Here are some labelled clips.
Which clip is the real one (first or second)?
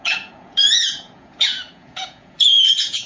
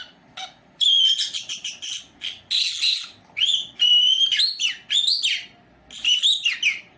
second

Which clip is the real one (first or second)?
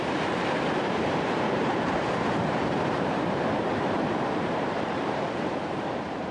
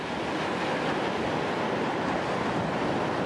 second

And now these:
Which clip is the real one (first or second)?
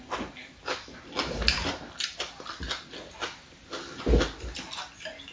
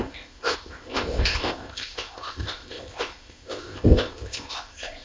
first